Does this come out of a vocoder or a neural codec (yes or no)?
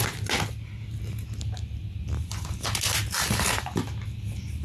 no